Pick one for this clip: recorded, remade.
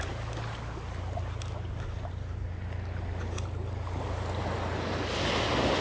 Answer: recorded